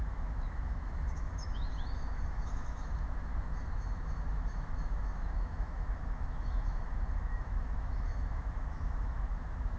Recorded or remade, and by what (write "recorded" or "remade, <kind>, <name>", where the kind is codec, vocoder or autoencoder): remade, autoencoder, DAC-VAE